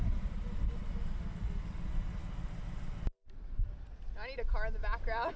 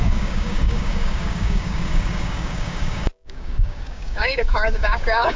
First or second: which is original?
first